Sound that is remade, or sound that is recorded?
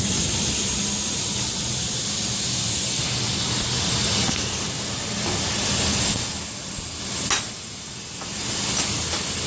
recorded